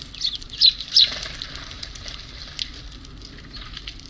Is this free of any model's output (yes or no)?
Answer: yes